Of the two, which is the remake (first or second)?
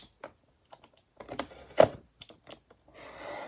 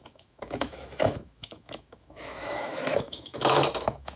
second